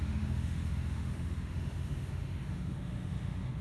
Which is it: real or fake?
fake